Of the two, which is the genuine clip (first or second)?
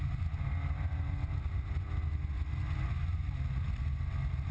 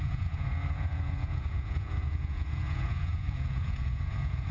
first